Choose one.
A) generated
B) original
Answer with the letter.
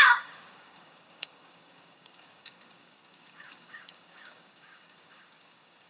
A